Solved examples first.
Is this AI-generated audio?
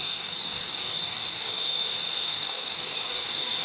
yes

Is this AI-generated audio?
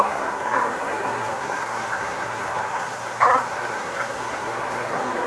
yes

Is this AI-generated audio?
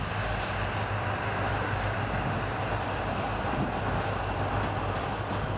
no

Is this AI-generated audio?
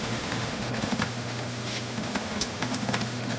yes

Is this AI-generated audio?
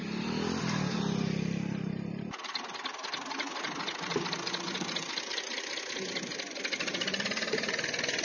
no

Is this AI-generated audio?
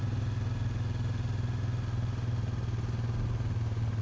no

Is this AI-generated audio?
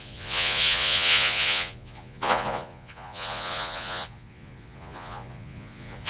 yes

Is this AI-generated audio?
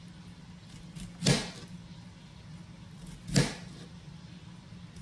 no